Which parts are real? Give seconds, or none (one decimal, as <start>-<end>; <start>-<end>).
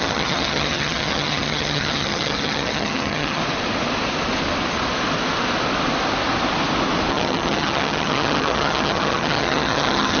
3.4-7.1